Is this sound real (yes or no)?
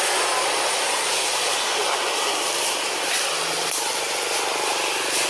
yes